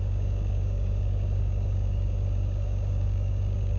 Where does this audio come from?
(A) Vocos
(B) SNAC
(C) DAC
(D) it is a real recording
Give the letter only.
C